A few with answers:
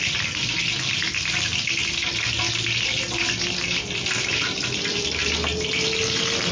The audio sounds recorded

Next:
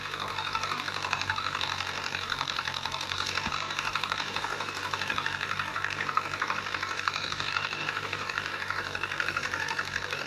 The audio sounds remade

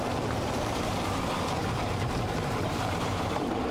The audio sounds remade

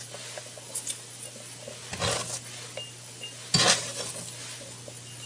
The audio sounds recorded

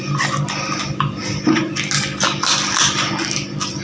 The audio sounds recorded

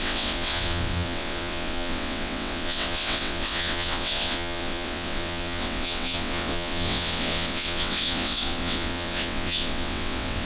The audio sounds remade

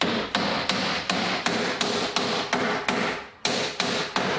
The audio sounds remade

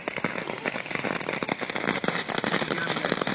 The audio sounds recorded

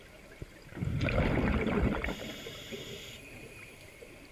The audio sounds remade